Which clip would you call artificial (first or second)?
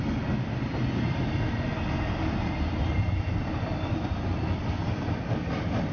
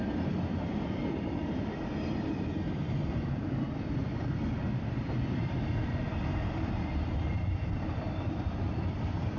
second